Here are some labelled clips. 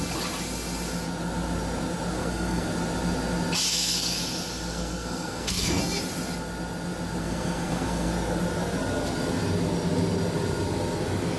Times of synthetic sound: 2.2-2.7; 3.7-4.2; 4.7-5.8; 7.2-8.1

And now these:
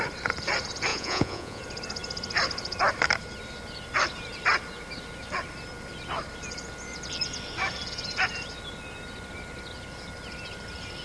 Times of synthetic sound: 0.9-1.6

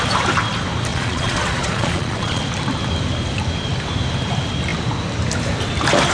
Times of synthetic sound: 0.9-2.4

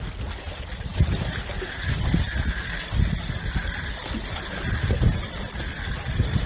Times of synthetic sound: none

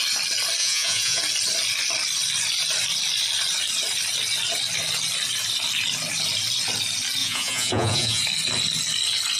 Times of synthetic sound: 0.6-1.2; 7.2-8.2